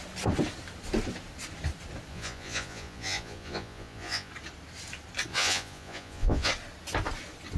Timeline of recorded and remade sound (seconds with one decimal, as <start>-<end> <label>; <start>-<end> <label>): 0.0-2.1 recorded; 2.1-4.3 remade; 4.3-5.3 recorded; 5.3-6.5 remade; 6.5-7.6 recorded